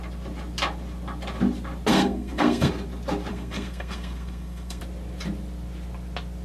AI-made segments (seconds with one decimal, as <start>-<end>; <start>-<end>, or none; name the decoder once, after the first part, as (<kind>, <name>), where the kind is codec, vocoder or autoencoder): 1.9-2.7 (codec, SNAC); 3.3-4.8